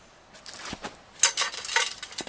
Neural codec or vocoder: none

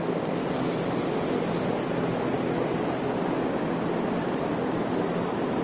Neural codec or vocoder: none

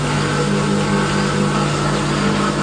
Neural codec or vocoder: none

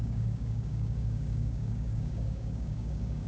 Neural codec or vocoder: codec, DAC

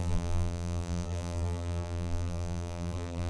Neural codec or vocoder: vocoder, BigVGAN v2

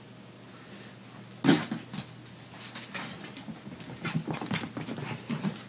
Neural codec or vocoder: none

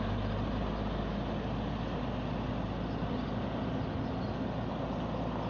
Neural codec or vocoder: none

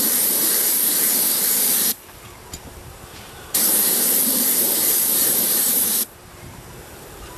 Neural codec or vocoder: vocoder, BigVGAN v2